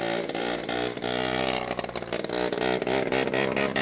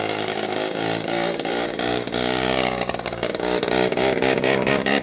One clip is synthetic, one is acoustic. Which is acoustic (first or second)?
first